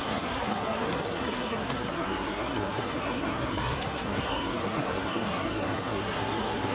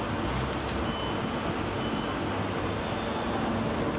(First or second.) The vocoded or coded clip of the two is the first